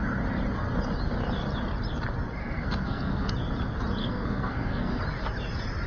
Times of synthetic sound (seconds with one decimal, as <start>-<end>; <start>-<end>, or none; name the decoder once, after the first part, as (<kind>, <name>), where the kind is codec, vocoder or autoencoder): 2.4-3.3 (codec, SNAC); 4.0-5.0